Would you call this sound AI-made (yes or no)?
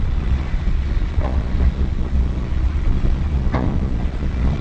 yes